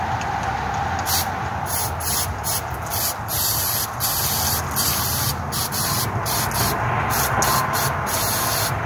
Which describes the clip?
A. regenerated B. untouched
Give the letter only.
B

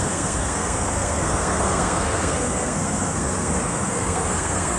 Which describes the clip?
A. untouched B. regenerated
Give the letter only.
B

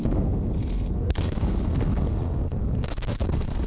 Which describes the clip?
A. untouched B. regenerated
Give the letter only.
B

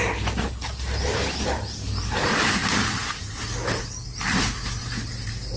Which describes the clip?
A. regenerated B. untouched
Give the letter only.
B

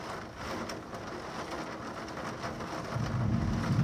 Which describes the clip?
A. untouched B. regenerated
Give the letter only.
A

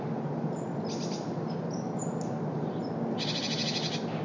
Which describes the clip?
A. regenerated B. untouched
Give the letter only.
B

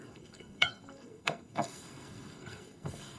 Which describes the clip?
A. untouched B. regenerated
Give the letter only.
B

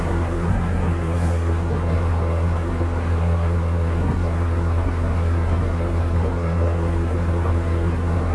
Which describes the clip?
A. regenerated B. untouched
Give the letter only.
A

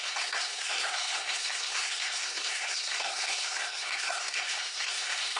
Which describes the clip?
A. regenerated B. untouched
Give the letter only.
A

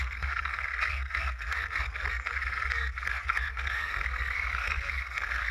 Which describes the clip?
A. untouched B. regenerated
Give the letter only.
B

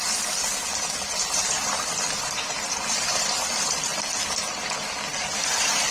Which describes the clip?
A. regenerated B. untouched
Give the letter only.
B